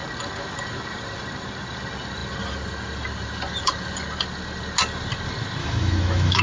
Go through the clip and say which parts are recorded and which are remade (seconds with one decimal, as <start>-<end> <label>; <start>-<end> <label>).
0.0-5.6 recorded; 5.6-6.4 remade